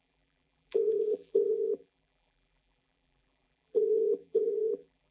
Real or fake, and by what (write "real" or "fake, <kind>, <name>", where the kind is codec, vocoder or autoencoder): fake, vocoder, BigVGAN v2